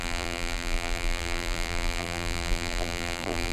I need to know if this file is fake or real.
fake